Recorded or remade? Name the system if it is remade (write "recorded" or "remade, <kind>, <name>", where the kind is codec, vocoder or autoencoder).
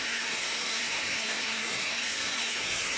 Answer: remade, codec, SNAC